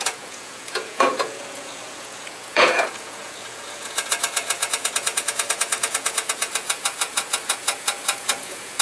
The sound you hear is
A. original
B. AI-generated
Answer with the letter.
B